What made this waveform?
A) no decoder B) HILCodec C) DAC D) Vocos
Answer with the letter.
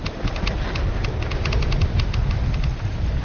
A